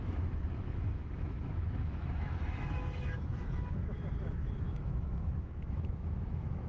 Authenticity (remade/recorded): remade